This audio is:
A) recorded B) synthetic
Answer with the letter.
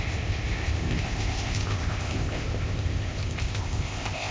B